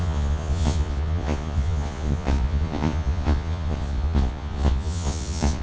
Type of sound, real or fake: fake